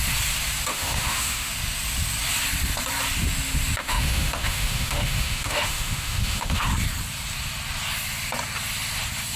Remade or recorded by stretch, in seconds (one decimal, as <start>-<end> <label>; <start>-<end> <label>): 0.0-0.7 recorded; 0.7-1.5 remade; 1.5-3.8 recorded; 3.8-6.7 remade; 6.7-9.4 recorded